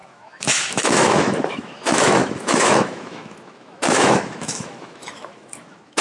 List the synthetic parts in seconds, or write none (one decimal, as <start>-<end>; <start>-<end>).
0.0-6.0